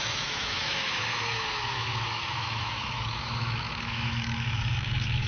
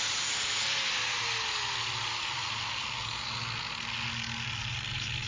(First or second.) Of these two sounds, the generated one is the first